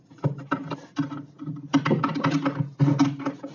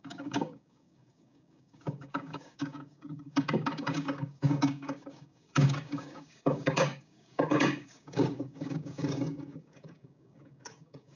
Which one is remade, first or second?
second